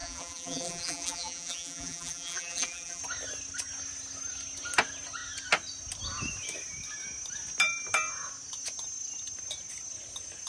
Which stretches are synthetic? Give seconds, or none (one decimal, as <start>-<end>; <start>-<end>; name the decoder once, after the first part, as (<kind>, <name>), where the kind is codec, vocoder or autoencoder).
0.0-3.0 (vocoder, BigVGAN v2)